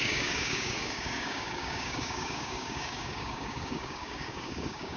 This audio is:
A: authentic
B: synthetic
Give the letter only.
B